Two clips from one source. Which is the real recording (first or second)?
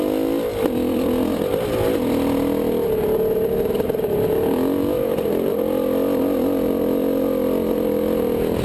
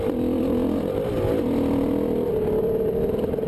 first